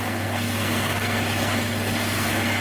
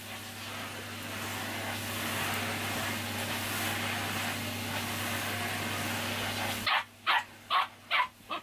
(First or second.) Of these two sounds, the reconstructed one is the first